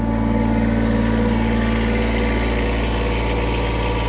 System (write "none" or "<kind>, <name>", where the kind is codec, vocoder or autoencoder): none